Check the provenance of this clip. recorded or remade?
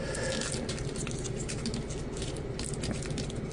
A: recorded